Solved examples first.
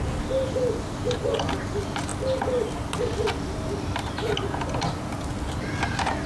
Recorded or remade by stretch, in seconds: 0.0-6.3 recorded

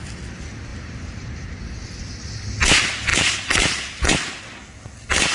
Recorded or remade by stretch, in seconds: 0.0-0.7 recorded; 0.7-1.5 remade; 1.5-3.1 recorded; 3.1-4.4 remade; 4.4-5.3 recorded

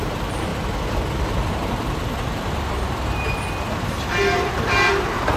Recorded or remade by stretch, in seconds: 0.0-0.5 remade; 0.5-1.5 recorded; 1.5-5.4 remade